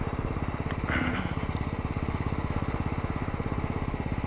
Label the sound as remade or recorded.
recorded